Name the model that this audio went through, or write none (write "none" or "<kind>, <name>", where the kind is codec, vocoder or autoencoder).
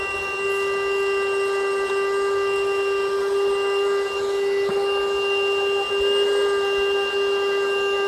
none